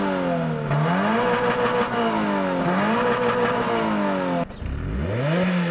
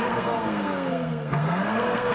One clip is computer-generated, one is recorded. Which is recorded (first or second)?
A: first